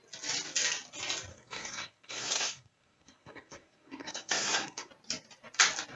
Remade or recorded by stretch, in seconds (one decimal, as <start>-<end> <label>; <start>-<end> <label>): 0.0-1.3 recorded; 1.3-4.9 remade; 4.9-6.0 recorded